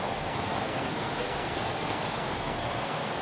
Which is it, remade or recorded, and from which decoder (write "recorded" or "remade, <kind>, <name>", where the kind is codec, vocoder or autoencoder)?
remade, codec, SNAC